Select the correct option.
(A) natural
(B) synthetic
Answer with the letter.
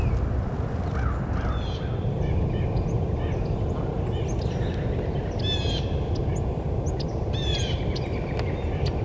A